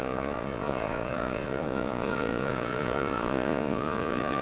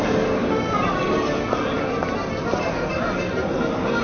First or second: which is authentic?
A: second